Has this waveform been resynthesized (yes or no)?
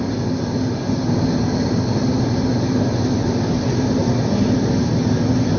no